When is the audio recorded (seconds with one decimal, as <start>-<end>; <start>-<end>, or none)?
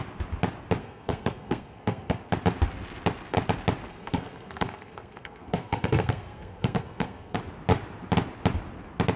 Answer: 0.0-0.8; 2.3-3.9; 7.4-9.2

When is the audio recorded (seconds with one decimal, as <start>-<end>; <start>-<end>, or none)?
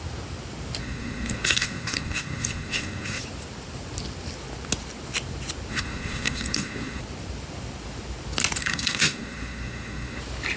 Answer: 0.0-0.8; 3.2-5.7; 7.0-8.6; 10.2-10.6